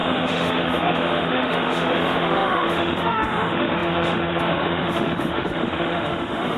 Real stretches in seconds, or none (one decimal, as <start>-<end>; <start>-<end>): none